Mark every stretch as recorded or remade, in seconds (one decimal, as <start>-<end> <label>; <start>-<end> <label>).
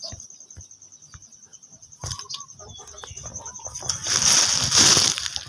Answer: 0.0-5.5 recorded